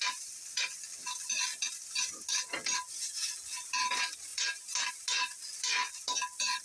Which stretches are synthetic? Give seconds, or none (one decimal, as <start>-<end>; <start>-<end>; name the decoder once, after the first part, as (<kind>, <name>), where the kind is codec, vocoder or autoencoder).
none